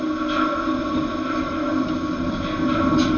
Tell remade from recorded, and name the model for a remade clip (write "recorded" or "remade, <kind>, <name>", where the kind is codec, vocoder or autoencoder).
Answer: recorded